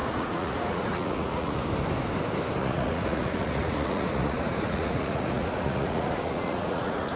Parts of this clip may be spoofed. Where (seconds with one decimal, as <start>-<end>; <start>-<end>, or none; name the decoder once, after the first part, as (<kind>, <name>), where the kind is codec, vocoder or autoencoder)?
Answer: 0.0-1.6 (vocoder, Vocos); 2.6-7.2